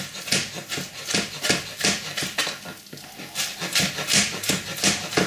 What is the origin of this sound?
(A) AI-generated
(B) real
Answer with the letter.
B